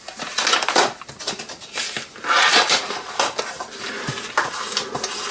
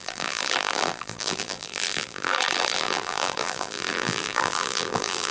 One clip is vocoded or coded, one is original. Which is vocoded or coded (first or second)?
second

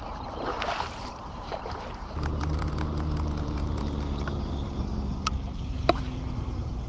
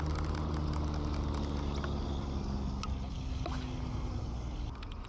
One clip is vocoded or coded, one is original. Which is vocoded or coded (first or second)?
first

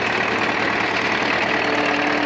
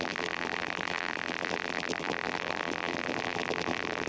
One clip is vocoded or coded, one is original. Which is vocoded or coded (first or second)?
second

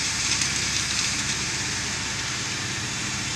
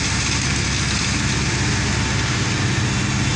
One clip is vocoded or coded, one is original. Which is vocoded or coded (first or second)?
first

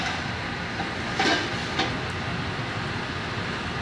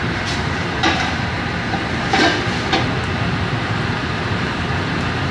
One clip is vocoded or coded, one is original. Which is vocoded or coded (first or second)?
second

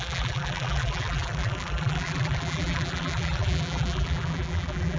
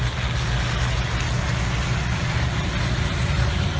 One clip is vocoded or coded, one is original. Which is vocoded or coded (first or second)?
first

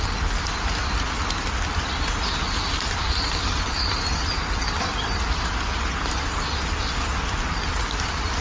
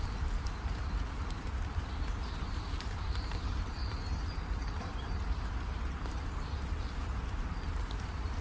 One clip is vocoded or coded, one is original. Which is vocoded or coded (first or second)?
second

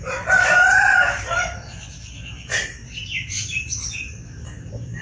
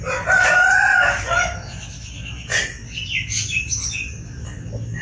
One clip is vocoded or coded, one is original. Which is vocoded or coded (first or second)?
first